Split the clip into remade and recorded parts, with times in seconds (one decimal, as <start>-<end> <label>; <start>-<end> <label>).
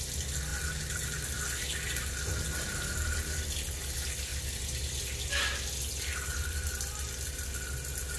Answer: 0.0-4.3 recorded; 4.3-4.9 remade; 4.9-8.2 recorded